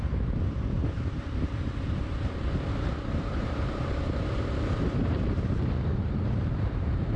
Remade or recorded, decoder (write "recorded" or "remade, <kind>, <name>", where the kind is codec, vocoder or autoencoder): remade, vocoder, BigVGAN v2